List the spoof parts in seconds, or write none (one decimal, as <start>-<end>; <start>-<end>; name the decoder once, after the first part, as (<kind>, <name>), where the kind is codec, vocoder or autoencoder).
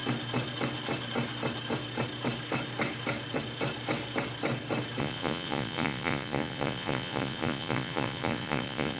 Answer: 5.0-9.0 (vocoder, Vocos)